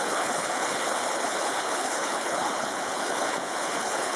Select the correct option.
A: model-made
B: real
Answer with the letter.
A